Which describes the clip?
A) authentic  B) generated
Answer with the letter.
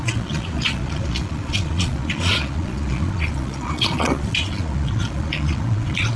B